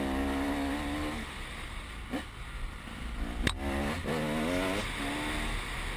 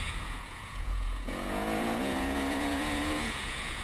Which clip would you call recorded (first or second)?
first